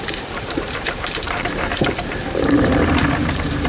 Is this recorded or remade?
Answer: remade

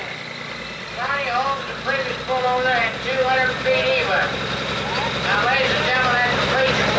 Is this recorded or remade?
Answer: recorded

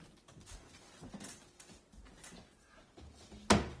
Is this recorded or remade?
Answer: recorded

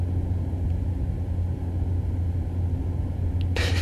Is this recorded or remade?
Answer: recorded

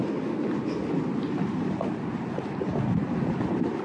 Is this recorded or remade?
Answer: recorded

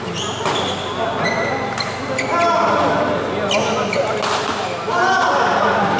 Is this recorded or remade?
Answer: recorded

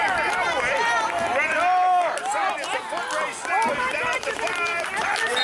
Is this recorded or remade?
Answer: recorded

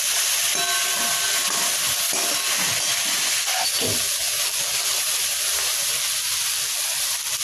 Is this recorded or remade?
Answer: recorded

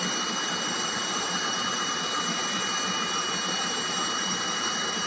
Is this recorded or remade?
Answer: remade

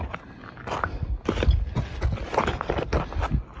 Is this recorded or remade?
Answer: recorded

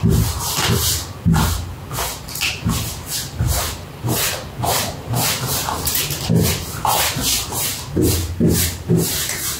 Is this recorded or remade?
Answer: recorded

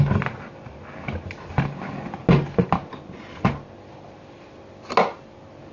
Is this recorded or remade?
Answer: recorded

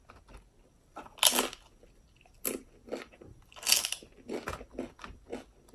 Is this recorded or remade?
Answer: recorded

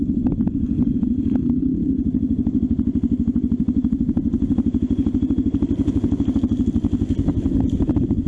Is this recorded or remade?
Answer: remade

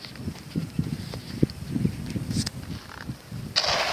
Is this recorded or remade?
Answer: recorded